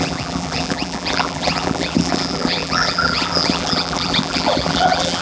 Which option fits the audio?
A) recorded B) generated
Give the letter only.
B